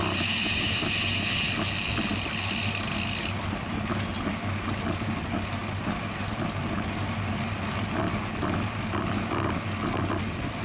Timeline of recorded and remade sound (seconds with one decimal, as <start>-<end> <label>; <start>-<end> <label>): 0.0-10.6 recorded